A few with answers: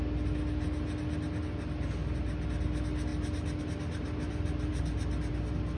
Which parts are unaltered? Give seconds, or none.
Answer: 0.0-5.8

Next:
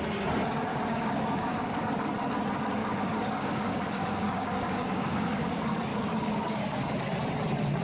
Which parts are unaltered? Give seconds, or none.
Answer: 0.0-0.7; 1.8-2.8; 5.5-5.9; 6.8-7.8

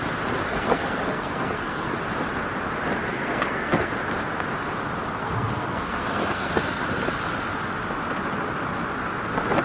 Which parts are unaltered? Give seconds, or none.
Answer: 0.0-0.5; 2.0-3.1; 3.9-5.2; 6.8-9.6

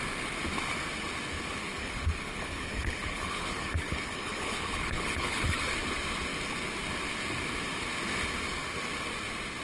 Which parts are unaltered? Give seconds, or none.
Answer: 0.0-1.7; 5.6-9.6

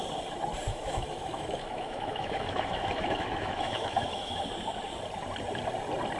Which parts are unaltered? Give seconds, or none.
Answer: 0.0-0.7; 4.4-6.2